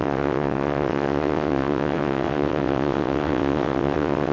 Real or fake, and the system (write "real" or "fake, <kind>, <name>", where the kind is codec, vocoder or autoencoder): fake, vocoder, WaveNeXt